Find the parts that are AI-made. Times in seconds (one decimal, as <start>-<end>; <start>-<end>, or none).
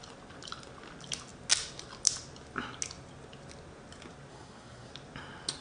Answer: 4.3-4.9